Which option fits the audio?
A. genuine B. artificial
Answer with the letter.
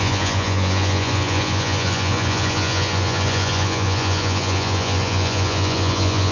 B